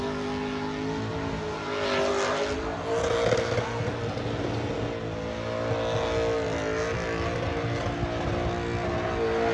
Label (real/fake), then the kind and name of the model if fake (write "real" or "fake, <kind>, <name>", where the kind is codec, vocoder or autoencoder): real